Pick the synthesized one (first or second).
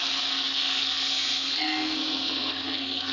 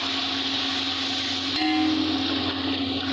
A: first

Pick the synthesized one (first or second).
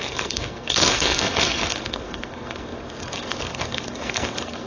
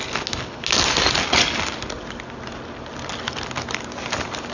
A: first